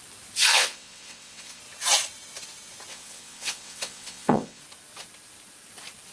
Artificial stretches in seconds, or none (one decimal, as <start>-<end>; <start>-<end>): 0.5-1.6; 2.9-4.6